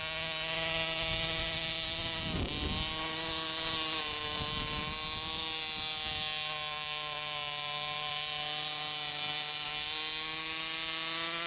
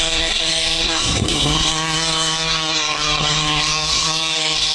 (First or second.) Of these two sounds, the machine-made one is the second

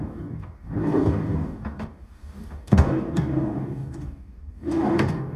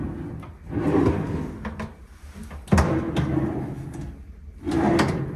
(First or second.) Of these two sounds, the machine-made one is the first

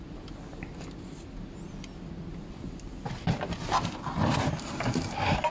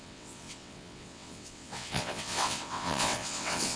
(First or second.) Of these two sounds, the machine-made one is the second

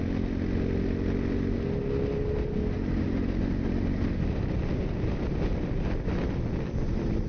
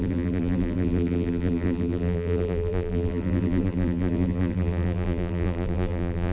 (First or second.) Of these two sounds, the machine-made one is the second